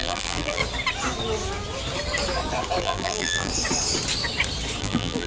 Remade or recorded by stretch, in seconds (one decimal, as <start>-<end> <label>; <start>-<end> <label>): 0.0-0.6 remade; 0.6-2.8 recorded; 2.8-3.5 remade; 3.5-4.8 recorded; 4.8-5.3 remade